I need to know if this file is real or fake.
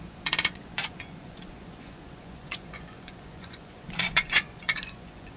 fake